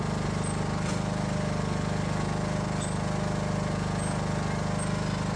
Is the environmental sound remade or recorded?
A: recorded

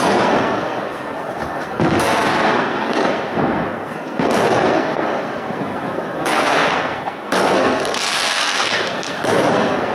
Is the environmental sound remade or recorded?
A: remade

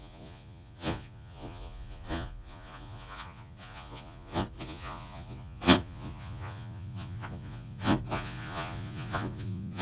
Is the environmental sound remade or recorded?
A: remade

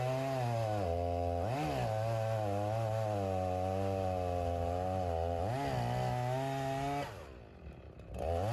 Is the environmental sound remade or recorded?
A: recorded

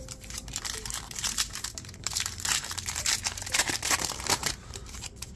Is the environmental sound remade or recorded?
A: remade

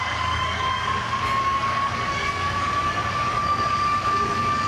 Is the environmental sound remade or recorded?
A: remade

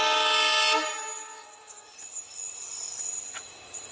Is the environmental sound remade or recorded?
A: recorded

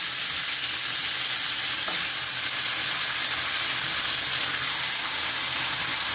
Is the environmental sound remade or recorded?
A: recorded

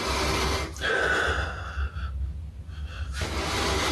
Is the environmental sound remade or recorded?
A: recorded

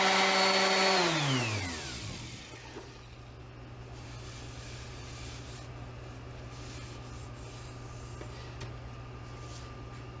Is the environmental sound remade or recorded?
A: recorded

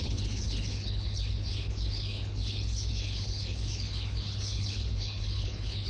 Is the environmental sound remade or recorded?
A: remade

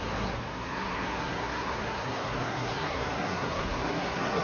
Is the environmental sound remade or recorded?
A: remade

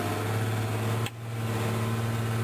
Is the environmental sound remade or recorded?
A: recorded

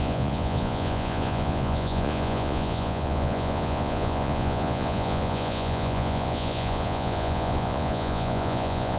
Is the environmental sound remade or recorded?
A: remade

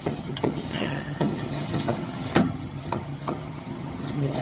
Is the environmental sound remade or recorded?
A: remade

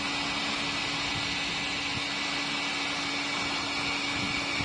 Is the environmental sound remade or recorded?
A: recorded